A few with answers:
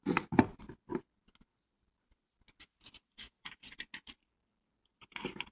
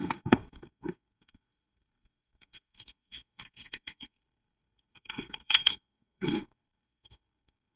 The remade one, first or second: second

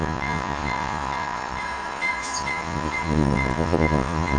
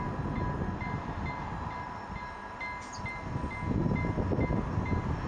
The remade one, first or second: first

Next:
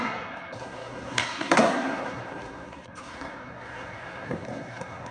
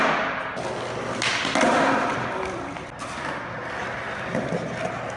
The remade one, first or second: first